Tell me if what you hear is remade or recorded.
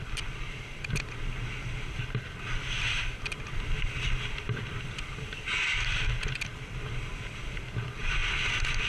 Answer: recorded